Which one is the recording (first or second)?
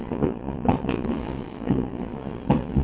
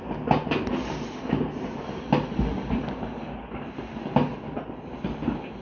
second